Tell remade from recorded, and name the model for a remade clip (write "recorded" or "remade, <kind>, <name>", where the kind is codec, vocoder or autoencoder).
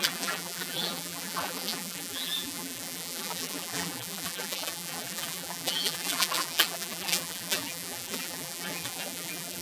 remade, vocoder, BigVGAN v2